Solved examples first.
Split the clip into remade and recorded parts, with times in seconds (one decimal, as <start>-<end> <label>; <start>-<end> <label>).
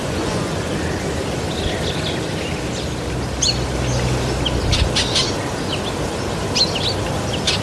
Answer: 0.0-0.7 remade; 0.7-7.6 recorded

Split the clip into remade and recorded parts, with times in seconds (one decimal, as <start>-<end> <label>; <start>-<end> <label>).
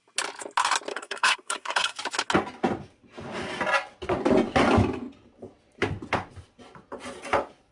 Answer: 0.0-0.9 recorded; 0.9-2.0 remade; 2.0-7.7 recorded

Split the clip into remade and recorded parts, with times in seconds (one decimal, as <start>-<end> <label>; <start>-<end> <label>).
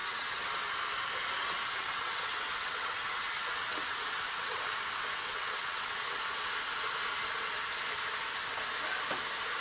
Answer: 0.0-0.6 remade; 0.6-1.4 recorded; 1.4-4.6 remade; 4.6-5.3 recorded; 5.3-6.2 remade; 6.2-9.6 recorded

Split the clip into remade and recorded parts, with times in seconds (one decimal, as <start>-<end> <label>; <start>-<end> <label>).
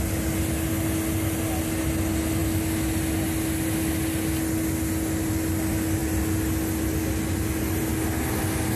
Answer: 0.0-8.8 recorded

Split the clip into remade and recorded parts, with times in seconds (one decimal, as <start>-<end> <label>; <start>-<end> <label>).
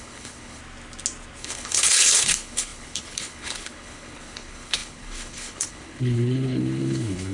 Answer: 0.0-0.6 remade; 0.6-1.4 recorded; 1.4-7.3 remade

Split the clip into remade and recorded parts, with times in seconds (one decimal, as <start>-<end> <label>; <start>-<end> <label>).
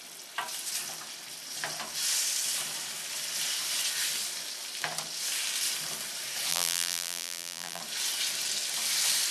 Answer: 0.0-6.5 recorded; 6.5-7.8 remade; 7.8-9.3 recorded